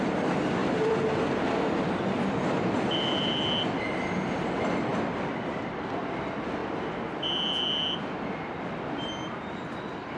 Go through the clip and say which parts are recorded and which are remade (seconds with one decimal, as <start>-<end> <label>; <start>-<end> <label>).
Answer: 0.0-10.2 recorded